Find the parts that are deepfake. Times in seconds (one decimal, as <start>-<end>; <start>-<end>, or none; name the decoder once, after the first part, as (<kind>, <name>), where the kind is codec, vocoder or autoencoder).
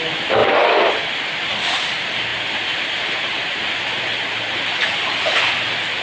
none